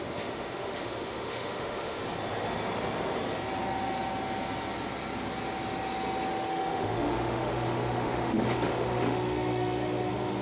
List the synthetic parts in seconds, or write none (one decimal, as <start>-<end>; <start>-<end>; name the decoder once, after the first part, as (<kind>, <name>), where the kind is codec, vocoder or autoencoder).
0.0-2.0 (autoencoder, DAC-VAE); 6.5-10.4